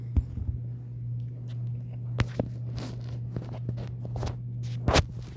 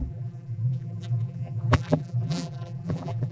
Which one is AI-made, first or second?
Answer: second